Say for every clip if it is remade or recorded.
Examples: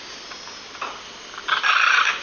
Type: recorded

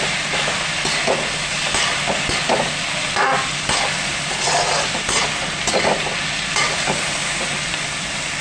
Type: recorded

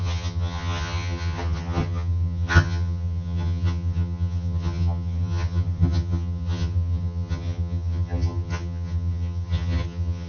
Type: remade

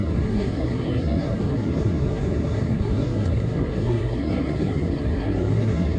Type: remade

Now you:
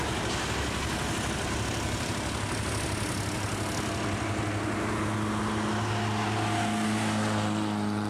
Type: recorded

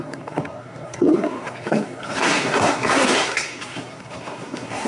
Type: remade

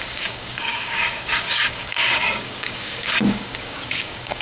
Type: remade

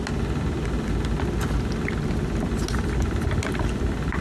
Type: recorded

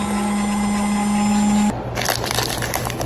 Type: recorded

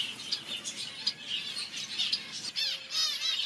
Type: recorded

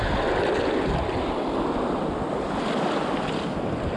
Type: recorded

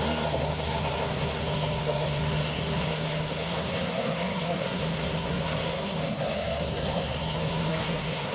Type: remade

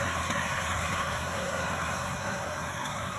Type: remade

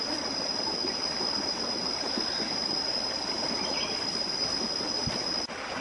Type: recorded